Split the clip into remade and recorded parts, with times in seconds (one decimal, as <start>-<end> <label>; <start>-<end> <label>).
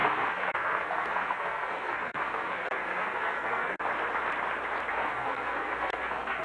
0.0-3.8 remade; 3.8-4.9 recorded; 4.9-6.4 remade